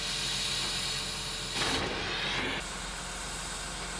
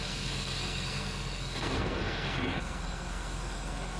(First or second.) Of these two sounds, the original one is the first